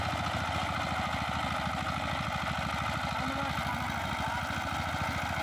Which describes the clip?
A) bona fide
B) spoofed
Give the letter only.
A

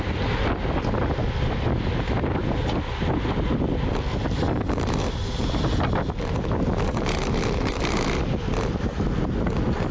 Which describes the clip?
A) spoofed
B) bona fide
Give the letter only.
B